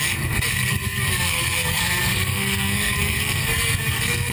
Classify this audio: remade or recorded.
remade